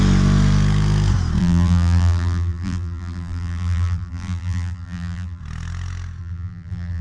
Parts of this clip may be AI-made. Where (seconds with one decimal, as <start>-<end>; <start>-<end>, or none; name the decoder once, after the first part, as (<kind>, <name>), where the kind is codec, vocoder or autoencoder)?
1.4-5.4 (vocoder, BigVGAN v2); 6.2-7.0